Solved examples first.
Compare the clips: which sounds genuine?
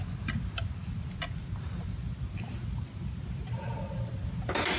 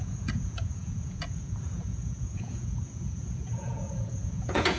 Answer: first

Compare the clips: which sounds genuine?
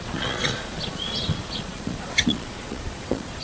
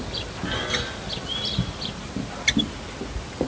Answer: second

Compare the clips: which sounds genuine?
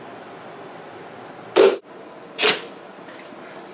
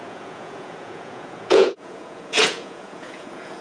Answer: first